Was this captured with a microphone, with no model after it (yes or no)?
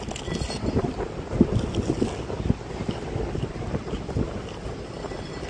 yes